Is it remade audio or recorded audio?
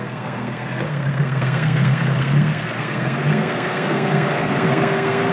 remade